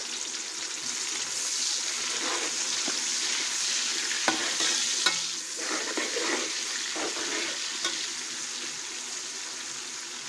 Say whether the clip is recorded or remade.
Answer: recorded